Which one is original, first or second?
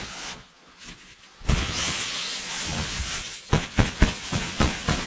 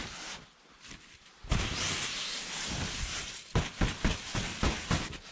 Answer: second